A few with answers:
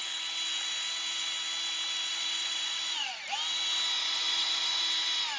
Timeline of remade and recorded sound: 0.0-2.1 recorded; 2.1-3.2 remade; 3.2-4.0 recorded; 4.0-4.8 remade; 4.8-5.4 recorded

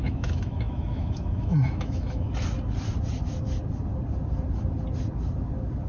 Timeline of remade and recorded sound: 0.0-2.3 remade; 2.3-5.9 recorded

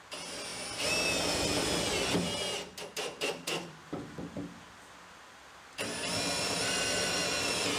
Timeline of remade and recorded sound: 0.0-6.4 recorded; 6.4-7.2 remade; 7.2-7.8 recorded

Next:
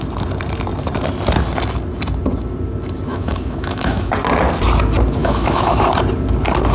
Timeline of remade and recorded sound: 0.0-3.1 recorded; 3.1-4.1 remade; 4.1-5.2 recorded; 5.2-5.8 remade; 5.8-6.7 recorded

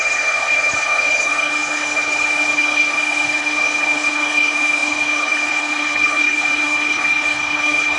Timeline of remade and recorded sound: 0.0-8.0 remade

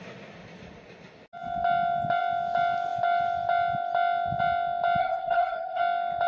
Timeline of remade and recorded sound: 0.0-5.0 recorded; 5.0-5.8 remade; 5.8-6.3 recorded

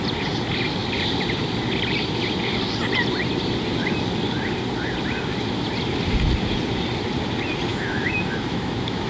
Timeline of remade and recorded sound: 0.0-7.7 recorded; 7.7-9.1 remade